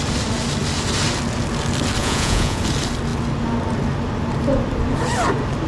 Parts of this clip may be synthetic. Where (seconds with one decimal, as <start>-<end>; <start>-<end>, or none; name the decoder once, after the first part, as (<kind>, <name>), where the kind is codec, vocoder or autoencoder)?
2.0-2.6 (vocoder, Vocos)